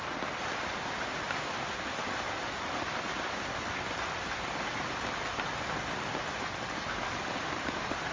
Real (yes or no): yes